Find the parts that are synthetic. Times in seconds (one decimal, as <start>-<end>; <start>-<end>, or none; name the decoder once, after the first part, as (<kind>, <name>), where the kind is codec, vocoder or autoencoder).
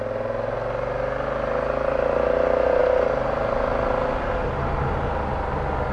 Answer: none